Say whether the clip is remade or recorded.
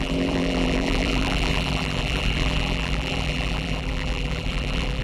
remade